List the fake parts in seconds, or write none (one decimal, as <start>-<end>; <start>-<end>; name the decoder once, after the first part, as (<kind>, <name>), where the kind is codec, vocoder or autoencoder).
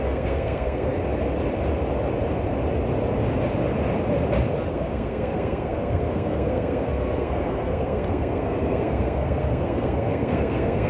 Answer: 0.0-0.9 (codec, SNAC); 4.7-10.9